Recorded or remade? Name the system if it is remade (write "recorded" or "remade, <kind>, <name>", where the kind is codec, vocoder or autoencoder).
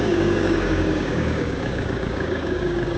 remade, codec, DAC